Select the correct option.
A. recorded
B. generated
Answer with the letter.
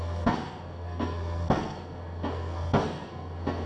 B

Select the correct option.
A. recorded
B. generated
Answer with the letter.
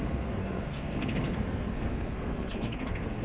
B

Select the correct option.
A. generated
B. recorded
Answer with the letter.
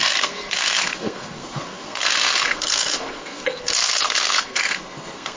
A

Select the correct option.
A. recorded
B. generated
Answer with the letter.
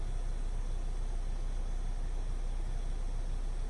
A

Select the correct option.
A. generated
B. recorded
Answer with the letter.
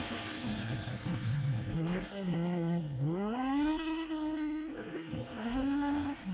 A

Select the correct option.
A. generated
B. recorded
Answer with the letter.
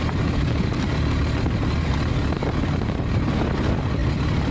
B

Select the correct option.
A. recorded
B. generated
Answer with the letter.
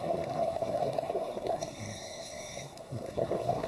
B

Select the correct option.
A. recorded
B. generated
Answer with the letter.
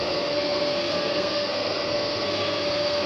B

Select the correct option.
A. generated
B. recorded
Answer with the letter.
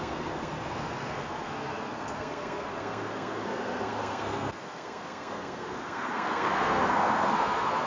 A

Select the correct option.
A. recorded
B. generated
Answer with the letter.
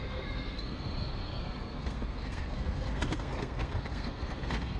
B